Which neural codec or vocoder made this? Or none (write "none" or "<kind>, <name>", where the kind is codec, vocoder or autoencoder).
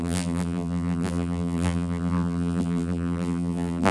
vocoder, BigVGAN v2